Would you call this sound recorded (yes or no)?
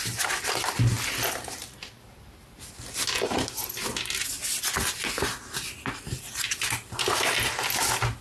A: yes